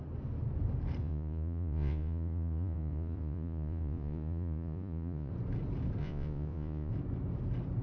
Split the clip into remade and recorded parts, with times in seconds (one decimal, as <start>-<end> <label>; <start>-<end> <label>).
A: 0.0-1.0 recorded; 1.0-5.3 remade; 5.3-6.0 recorded; 6.0-6.9 remade; 6.9-7.8 recorded